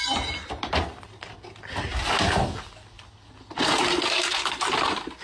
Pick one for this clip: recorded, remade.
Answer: recorded